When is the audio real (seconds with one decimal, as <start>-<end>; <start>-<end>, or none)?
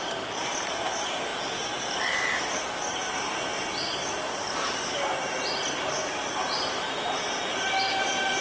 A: 0.0-8.4